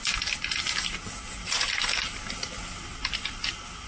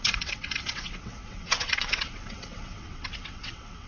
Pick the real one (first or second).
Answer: first